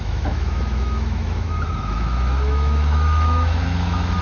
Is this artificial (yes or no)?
yes